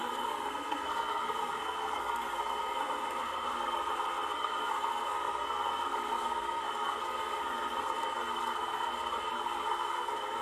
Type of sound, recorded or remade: remade